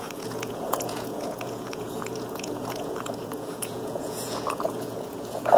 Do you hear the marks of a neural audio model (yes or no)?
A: yes